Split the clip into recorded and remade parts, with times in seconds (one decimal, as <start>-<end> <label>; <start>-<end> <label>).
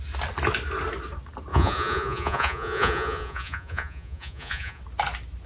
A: 0.0-1.5 recorded; 1.5-4.8 remade; 4.8-5.5 recorded